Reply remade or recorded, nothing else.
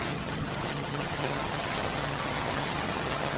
remade